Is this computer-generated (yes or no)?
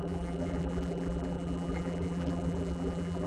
yes